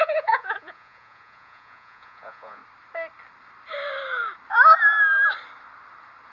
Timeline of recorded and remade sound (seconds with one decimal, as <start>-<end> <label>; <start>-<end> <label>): 0.0-2.6 remade; 2.6-6.3 recorded